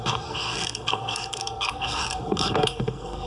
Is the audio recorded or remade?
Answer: remade